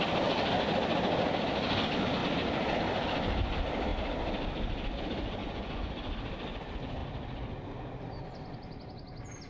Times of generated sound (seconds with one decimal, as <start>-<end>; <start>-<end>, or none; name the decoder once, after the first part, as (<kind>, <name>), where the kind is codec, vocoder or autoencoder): 5.4-5.9 (vocoder, Vocos)